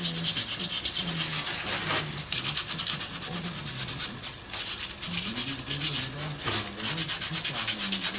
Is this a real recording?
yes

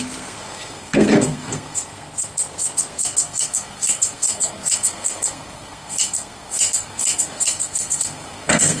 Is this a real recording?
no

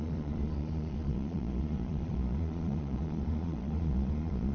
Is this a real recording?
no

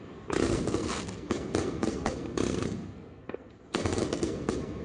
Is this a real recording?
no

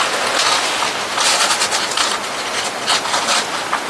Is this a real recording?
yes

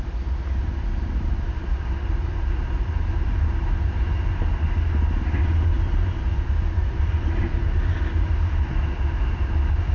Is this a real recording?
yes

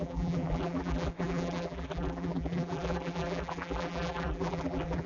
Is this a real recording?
no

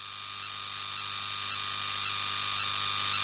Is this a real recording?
yes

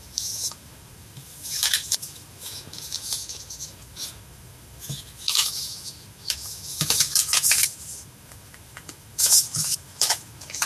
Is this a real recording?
no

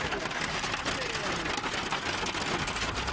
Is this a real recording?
yes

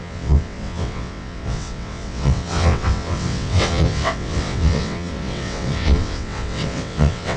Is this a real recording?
no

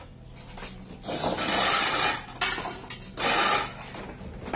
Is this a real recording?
yes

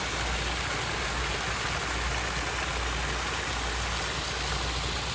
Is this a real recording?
yes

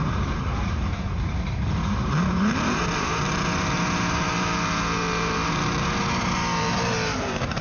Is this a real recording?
no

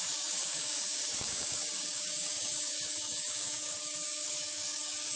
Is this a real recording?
no